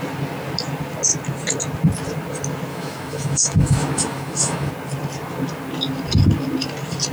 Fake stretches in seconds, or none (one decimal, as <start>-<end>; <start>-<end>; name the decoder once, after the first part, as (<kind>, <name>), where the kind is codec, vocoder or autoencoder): 2.7-4.7 (autoencoder, DAC-VAE)

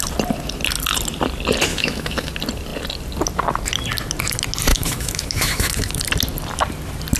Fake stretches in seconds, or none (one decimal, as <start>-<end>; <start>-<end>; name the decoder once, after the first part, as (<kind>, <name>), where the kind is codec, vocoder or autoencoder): 1.7-2.3 (autoencoder, DAC-VAE); 4.7-6.0

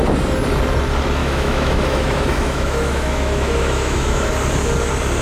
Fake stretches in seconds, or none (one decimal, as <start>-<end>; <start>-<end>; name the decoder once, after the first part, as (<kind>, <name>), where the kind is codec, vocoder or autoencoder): 1.2-4.3 (autoencoder, DAC-VAE)

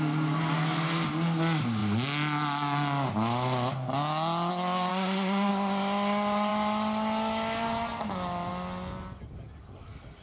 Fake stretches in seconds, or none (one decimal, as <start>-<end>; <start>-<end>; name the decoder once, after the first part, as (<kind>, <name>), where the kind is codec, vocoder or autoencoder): 4.9-5.5 (autoencoder, DAC-VAE)

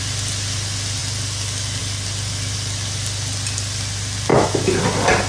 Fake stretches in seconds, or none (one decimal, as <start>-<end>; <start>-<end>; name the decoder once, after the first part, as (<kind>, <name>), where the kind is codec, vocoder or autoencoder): 4.3-4.8 (autoencoder, DAC-VAE)

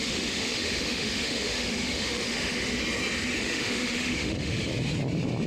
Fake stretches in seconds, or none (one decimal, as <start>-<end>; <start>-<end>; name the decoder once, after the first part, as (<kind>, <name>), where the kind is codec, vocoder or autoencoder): 0.0-2.8 (autoencoder, DAC-VAE); 3.4-4.7